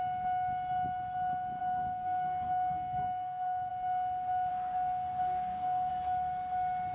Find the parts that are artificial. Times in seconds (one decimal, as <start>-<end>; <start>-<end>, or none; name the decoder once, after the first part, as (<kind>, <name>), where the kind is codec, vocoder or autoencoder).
1.6-3.7 (codec, SNAC); 4.5-5.9